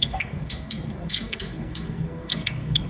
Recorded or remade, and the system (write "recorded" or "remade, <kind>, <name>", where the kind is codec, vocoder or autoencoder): remade, codec, SNAC